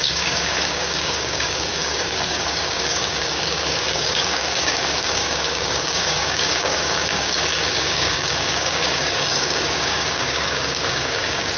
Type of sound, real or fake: fake